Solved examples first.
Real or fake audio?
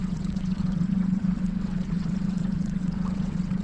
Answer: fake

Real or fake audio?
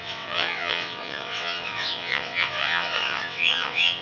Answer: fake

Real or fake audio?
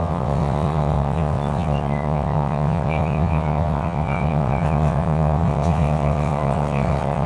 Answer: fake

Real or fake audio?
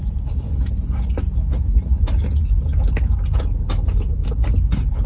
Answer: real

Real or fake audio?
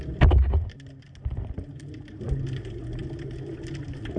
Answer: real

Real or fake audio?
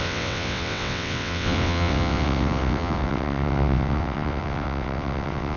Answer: fake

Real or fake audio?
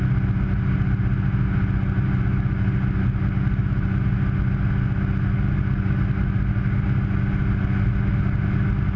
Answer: real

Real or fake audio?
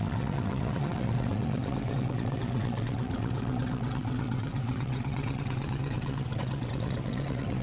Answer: fake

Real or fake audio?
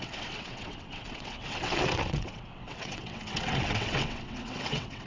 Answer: fake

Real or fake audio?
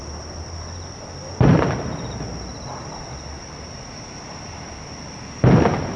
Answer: real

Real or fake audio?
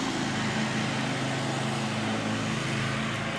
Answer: real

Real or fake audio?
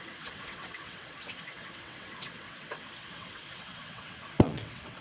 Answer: fake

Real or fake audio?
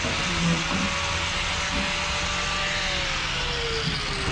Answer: real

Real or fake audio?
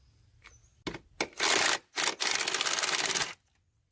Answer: real